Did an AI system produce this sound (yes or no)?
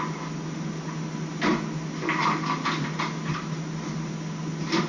no